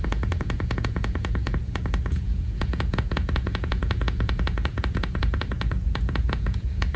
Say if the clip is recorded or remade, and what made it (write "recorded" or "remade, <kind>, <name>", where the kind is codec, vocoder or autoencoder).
remade, vocoder, Vocos